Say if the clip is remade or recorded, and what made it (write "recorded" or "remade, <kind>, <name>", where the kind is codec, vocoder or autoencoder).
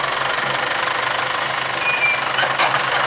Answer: recorded